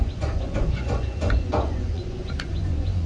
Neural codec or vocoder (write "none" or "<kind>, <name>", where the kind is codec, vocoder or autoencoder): vocoder, Vocos